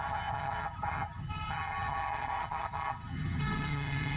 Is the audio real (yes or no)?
no